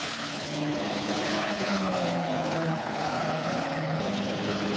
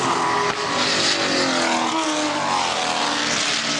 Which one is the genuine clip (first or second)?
second